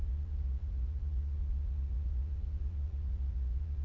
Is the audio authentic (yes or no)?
no